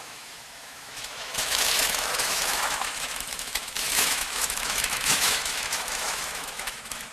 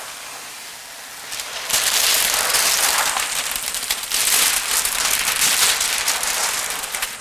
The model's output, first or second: first